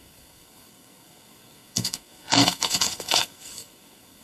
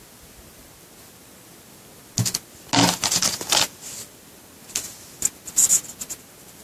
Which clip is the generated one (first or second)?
first